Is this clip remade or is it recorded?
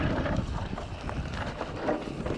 recorded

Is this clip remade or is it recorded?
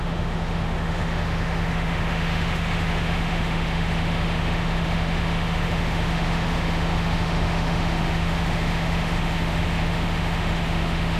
remade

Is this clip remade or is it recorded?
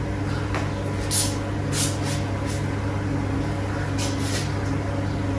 recorded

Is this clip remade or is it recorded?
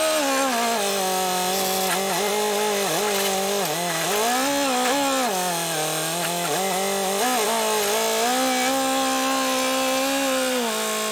recorded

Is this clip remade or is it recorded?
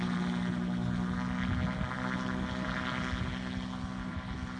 recorded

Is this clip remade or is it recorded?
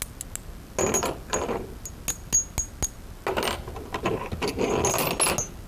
recorded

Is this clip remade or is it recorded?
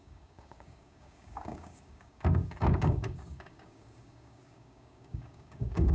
remade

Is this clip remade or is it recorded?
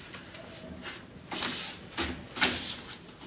recorded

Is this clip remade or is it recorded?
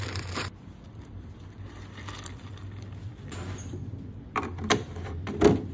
remade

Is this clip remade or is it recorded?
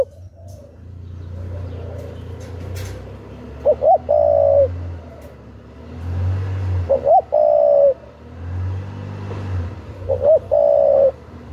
recorded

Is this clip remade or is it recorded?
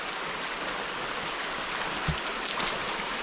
recorded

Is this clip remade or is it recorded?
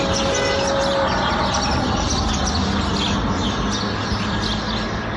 recorded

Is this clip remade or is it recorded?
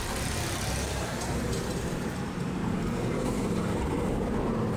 remade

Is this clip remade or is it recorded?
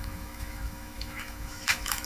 remade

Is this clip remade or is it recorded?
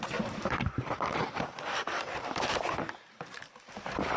remade